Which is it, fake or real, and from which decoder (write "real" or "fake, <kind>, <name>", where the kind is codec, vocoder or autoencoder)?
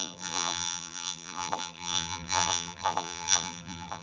fake, vocoder, BigVGAN v2